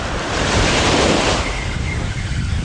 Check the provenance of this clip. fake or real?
fake